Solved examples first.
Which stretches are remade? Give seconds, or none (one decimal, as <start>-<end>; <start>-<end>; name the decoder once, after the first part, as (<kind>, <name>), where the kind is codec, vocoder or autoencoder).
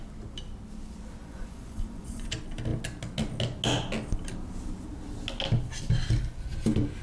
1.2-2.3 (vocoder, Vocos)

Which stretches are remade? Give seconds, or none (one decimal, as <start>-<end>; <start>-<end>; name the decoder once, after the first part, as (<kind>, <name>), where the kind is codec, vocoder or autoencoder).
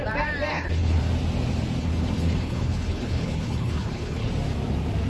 0.5-1.0 (codec, HILCodec); 1.8-4.3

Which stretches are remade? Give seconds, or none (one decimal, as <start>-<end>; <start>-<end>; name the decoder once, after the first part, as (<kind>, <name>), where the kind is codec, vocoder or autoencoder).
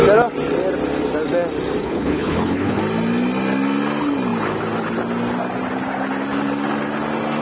1.8-2.8 (codec, HILCodec)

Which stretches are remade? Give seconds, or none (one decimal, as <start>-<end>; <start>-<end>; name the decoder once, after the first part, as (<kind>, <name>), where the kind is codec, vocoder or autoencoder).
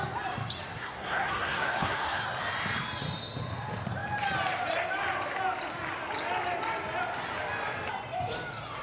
0.7-2.2 (codec, SNAC)